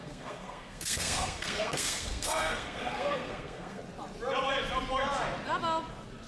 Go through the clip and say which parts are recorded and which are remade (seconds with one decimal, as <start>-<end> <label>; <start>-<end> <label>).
0.0-3.8 remade; 3.8-6.3 recorded